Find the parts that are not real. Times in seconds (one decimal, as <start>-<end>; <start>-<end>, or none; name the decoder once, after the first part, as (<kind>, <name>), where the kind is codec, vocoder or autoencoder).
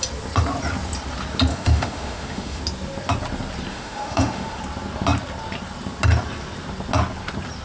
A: 1.5-2.6 (autoencoder, DAC-VAE); 3.7-4.6